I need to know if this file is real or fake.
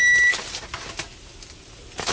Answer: real